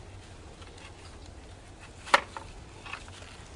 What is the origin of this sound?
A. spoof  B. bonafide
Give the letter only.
B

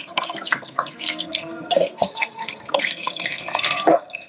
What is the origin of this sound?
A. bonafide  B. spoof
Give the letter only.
B